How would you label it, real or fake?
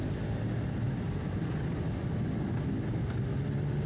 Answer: real